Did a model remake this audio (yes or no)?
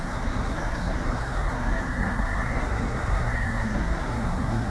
yes